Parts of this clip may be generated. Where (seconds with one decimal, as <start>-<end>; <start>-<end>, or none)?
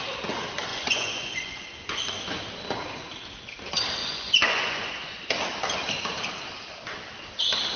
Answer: 0.7-2.0; 4.0-5.3